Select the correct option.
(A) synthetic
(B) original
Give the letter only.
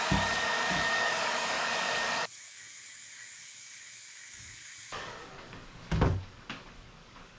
A